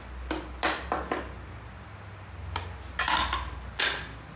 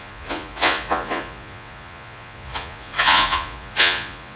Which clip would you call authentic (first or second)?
first